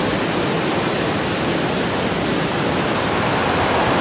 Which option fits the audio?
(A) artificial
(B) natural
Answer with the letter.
B